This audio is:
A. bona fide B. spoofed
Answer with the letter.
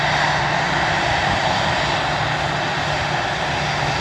A